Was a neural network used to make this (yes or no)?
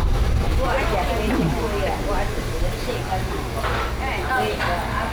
no